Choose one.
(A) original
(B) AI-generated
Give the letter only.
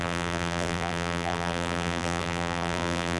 B